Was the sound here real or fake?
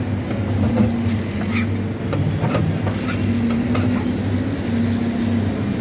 real